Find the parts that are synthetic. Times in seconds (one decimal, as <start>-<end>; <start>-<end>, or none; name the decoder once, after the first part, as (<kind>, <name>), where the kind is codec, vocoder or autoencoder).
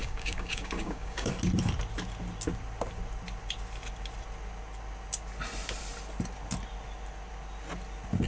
0.0-1.3 (codec, DAC)